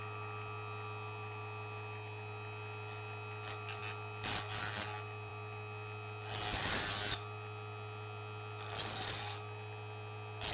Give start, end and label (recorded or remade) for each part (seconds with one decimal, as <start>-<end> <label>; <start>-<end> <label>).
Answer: 0.0-10.5 recorded